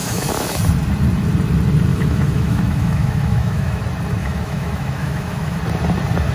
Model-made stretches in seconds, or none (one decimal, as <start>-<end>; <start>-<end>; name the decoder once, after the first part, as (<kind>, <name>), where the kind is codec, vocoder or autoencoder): 0.0-0.6 (autoencoder, DAC-VAE); 1.9-3.8; 4.2-5.6